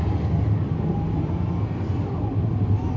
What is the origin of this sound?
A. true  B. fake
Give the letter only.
A